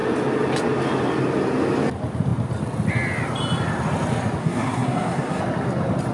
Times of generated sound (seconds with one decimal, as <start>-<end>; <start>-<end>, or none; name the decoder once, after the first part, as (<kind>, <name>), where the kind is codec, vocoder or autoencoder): 4.4-5.4 (codec, SNAC)